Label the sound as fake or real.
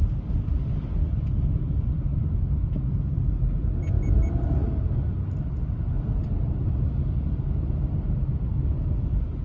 real